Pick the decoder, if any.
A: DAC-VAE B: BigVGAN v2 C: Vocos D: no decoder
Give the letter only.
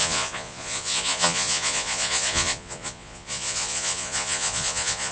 C